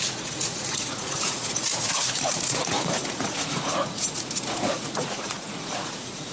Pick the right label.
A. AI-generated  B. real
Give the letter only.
A